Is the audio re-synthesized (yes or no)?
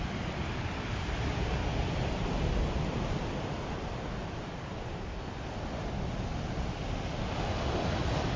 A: no